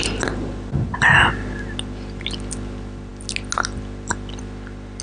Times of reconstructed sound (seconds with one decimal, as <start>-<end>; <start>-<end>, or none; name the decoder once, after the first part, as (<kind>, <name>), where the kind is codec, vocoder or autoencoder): none